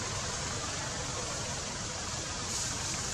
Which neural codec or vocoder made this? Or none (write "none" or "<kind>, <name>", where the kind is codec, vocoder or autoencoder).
vocoder, BigVGAN v2